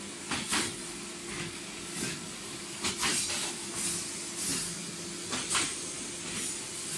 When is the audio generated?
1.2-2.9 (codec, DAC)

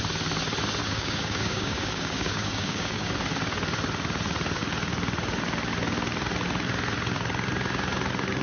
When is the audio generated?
0.8-3.1 (codec, DAC)

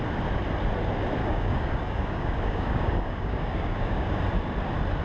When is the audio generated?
1.2-4.2 (codec, DAC)

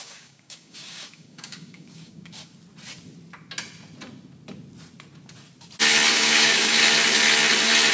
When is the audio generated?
0.0-2.4 (codec, DAC); 6.1-6.8

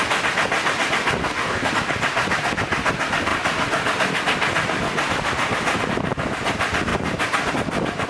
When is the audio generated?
1.2-1.7 (codec, DAC)

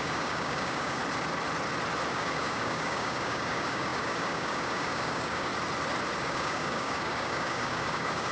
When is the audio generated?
0.0-1.0 (codec, DAC); 2.1-5.5; 6.2-8.3